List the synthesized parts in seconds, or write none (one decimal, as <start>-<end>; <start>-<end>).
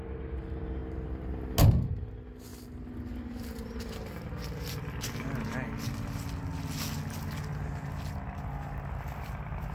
0.8-1.5